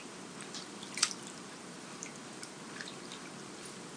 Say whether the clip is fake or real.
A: real